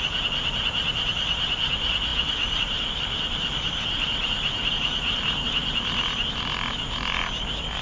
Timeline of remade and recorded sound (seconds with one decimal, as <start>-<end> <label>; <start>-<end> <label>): 0.0-7.8 recorded